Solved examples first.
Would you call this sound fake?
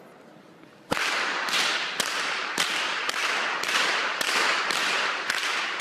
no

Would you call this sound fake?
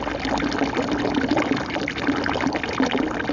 no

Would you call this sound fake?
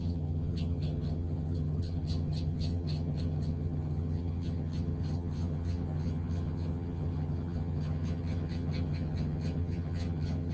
yes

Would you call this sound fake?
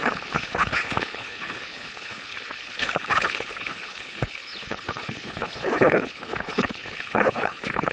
yes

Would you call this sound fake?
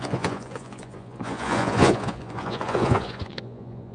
yes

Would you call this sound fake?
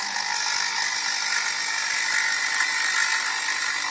no